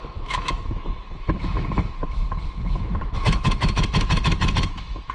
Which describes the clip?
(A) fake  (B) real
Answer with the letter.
A